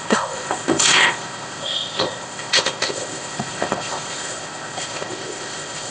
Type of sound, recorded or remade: remade